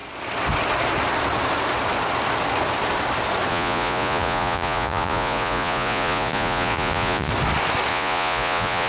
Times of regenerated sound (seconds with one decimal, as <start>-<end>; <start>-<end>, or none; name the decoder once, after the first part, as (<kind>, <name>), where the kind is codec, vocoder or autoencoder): 3.5-7.3 (vocoder, Vocos); 7.9-8.9